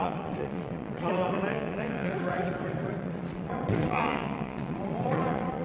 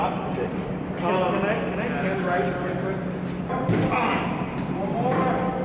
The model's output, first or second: first